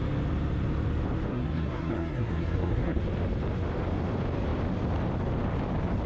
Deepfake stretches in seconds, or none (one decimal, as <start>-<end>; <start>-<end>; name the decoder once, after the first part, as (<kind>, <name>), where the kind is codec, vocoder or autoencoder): 1.3-3.0 (codec, SNAC)